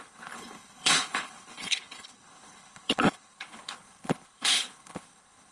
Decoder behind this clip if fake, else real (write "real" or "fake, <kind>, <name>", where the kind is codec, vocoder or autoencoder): fake, codec, HILCodec